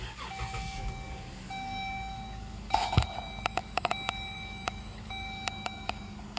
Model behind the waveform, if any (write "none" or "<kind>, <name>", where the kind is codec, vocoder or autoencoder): codec, DAC